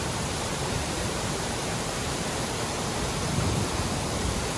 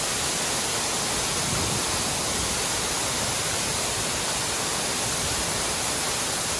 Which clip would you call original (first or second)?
second